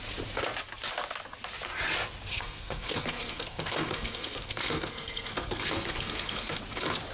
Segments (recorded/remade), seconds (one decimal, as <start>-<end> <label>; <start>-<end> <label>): 0.0-2.3 recorded; 2.3-6.6 remade; 6.6-7.1 recorded